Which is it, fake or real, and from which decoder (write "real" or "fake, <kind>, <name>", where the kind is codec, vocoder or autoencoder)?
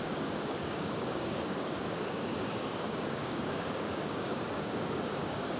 fake, codec, DAC